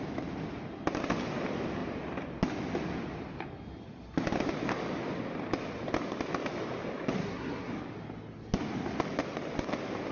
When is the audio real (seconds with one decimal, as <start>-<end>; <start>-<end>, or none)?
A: 0.0-7.2; 7.7-10.1

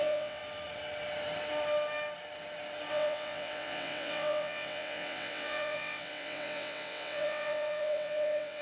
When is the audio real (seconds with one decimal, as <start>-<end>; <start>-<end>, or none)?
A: 0.4-2.9

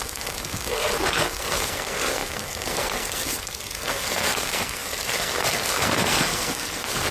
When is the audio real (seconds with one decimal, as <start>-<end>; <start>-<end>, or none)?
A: none

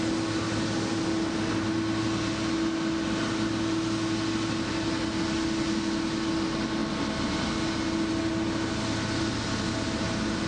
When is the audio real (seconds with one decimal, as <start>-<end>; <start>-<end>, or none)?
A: 0.0-10.5